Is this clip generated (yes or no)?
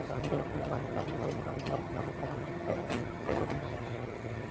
yes